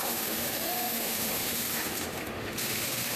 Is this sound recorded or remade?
remade